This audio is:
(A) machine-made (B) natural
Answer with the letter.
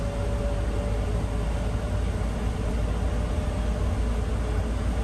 B